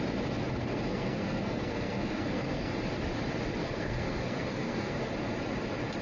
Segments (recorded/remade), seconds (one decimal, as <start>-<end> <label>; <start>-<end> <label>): 0.0-0.6 recorded; 0.6-2.7 remade; 2.7-3.6 recorded; 3.6-5.0 remade; 5.0-6.0 recorded